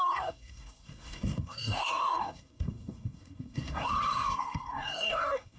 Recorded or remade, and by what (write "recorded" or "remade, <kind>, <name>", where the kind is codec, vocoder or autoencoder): remade, codec, SNAC